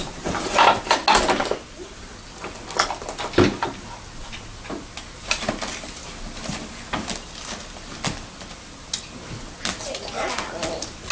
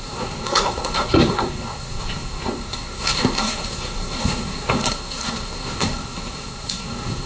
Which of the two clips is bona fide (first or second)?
first